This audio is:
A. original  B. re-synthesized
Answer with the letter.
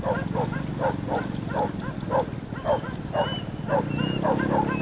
A